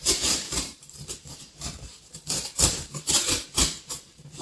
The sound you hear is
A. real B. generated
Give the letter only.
B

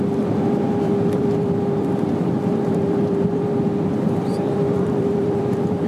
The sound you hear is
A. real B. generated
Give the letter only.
B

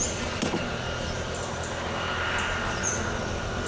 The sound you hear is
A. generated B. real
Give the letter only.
B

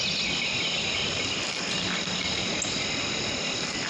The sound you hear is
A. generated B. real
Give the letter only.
B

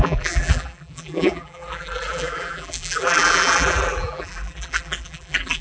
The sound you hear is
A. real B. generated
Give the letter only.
B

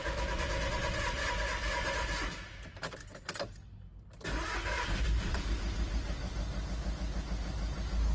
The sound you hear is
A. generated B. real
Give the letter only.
B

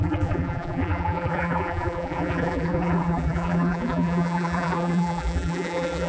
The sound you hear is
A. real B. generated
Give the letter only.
B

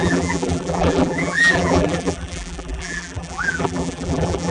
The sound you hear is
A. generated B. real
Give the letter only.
A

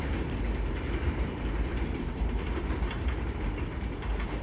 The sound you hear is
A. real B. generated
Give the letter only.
B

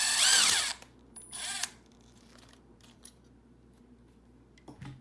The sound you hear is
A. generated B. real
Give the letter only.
A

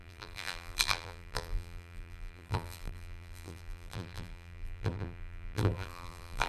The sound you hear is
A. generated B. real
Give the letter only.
A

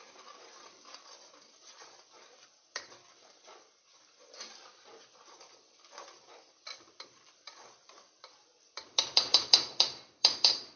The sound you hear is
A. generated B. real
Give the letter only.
A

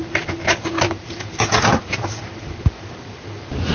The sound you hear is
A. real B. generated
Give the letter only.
B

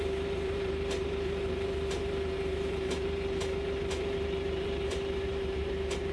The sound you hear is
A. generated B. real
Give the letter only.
A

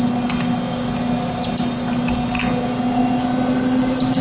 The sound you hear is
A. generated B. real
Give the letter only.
B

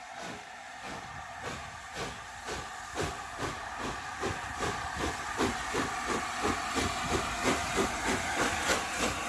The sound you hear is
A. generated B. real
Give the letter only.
B